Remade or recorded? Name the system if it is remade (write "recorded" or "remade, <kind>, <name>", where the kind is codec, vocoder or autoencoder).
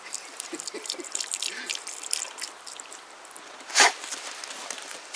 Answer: remade, vocoder, BigVGAN v2